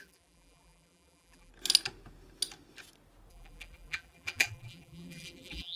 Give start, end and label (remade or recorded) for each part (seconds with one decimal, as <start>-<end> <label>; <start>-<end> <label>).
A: 0.0-1.5 remade; 1.5-3.3 recorded; 3.3-5.8 remade